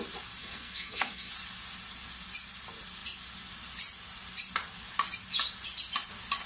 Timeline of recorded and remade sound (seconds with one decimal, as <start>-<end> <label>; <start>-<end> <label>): 0.0-0.4 recorded; 0.4-1.3 remade; 1.3-6.5 recorded